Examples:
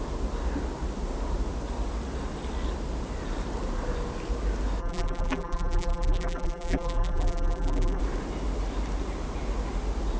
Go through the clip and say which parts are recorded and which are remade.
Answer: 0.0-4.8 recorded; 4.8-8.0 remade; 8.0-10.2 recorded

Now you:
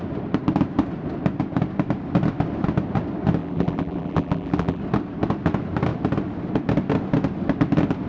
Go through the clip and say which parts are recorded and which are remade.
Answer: 0.0-3.4 recorded; 3.4-4.8 remade; 4.8-8.1 recorded